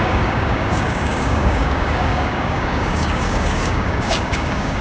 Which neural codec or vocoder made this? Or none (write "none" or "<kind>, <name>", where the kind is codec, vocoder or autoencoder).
codec, DAC